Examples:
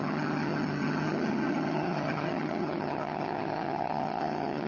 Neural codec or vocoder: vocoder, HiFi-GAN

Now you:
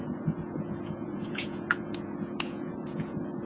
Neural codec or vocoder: vocoder, Vocos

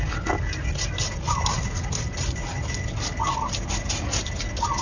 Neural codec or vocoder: none